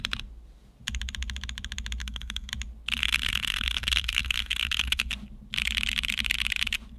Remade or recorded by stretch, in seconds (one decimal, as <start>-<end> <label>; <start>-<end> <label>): 0.0-2.0 recorded; 2.0-2.5 remade; 2.5-3.0 recorded; 3.0-5.1 remade; 5.1-7.0 recorded